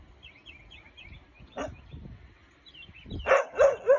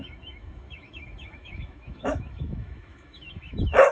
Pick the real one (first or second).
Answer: first